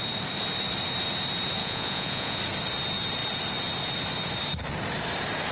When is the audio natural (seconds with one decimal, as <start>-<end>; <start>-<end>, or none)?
0.0-1.6; 2.4-5.5